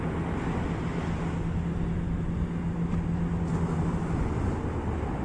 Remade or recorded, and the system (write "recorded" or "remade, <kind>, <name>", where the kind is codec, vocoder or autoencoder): recorded